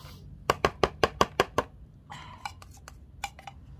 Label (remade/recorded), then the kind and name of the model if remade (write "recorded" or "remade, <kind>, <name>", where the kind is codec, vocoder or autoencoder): recorded